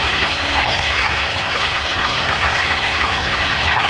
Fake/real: fake